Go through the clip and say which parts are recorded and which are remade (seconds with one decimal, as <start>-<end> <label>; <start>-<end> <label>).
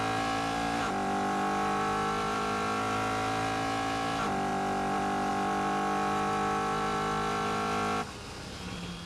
0.0-9.1 recorded